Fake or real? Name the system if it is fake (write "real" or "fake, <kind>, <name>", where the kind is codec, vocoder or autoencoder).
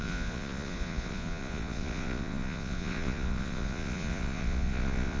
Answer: fake, vocoder, Vocos